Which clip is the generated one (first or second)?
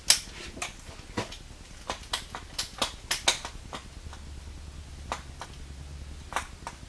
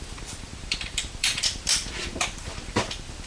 second